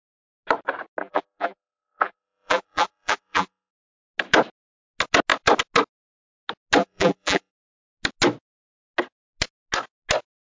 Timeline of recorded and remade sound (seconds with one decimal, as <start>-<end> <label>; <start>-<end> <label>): 0.0-1.0 recorded; 1.0-3.7 remade; 3.7-6.8 recorded; 6.8-7.5 remade; 7.5-10.6 recorded